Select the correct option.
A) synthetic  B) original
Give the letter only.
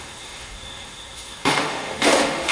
A